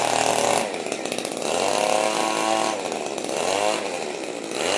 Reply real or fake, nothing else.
real